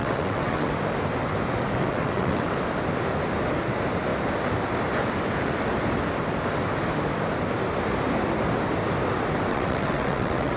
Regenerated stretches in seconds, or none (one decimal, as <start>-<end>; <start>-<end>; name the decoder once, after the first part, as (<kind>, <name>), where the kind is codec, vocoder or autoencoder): 0.0-0.7 (vocoder, WaveNeXt); 1.8-2.5; 9.5-10.6